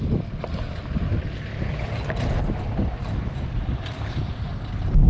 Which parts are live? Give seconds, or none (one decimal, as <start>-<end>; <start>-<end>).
0.0-3.0